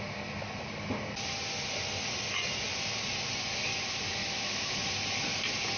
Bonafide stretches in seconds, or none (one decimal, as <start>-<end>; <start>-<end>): 0.0-4.2; 4.9-5.8